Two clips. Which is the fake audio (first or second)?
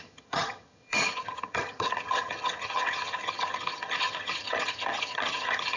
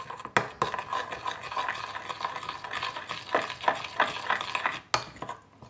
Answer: first